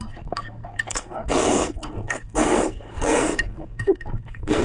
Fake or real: fake